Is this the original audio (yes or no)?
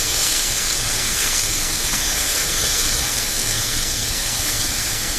no